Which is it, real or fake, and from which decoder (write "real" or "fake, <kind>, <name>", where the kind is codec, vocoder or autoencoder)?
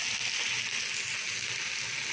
real